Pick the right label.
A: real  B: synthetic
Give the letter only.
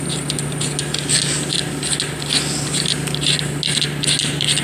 A